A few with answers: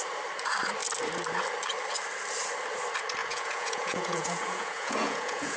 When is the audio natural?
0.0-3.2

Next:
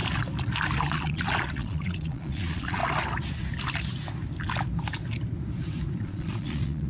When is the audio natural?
0.0-0.8; 2.8-6.0

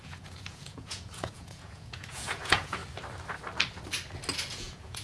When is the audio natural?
2.8-4.5